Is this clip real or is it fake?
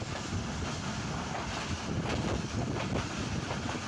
real